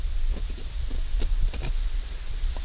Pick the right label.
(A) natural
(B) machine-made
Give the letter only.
A